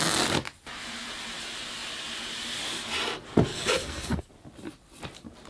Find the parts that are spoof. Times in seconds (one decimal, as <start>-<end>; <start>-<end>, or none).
3.5-4.3